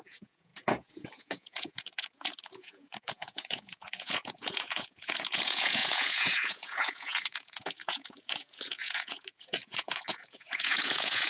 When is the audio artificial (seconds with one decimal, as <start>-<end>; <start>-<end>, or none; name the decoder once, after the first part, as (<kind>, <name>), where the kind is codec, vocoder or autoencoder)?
0.0-11.3 (vocoder, Vocos)